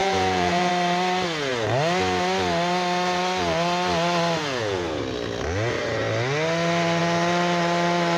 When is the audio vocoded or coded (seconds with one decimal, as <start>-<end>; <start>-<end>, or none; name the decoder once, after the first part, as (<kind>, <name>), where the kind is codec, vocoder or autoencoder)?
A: 0.0-0.7 (vocoder, Vocos); 4.4-5.0